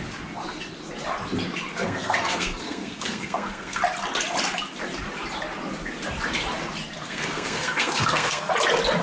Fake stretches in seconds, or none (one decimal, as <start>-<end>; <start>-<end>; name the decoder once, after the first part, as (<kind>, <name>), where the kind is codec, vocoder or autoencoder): 1.7-3.8 (codec, SNAC); 7.0-8.5